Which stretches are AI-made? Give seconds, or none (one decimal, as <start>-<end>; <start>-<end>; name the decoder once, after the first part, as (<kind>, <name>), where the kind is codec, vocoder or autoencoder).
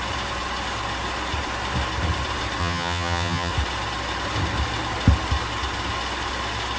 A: 2.6-3.5 (vocoder, HiFi-GAN)